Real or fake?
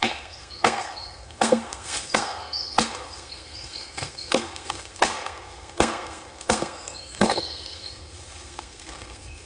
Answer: fake